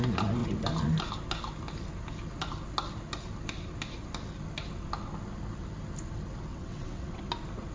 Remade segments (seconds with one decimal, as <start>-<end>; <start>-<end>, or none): 6.5-7.2